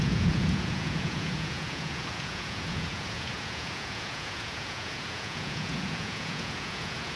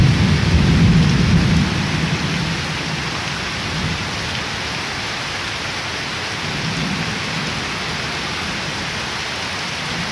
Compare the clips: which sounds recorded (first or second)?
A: second